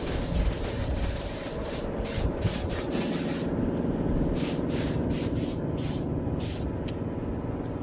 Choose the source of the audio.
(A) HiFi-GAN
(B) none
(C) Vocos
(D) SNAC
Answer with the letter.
B